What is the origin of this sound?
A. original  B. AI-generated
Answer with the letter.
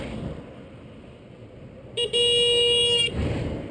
A